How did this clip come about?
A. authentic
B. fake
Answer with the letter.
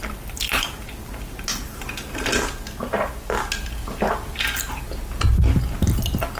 A